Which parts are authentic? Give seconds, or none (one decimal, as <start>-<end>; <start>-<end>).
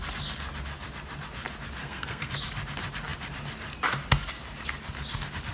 0.0-1.8; 2.3-5.5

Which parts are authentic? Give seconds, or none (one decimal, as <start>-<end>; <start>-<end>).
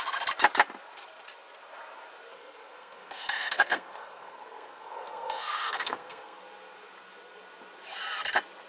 0.0-2.3; 6.4-8.7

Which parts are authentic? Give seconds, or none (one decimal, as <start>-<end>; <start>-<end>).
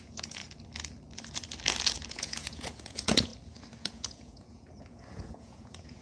0.4-2.1; 3.3-3.8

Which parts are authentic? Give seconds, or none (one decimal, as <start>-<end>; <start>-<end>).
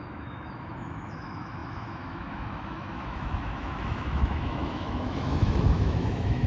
none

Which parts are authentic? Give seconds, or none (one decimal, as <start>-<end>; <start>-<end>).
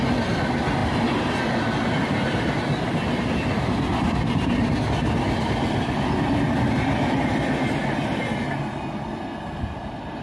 0.0-10.2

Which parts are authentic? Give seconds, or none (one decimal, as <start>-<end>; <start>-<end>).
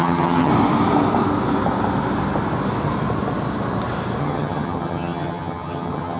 0.5-4.2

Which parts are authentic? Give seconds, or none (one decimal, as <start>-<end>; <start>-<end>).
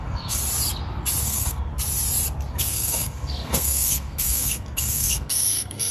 0.4-1.2; 1.7-2.5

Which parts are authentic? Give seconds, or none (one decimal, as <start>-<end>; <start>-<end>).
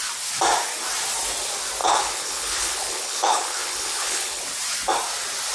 0.0-1.8; 4.4-5.5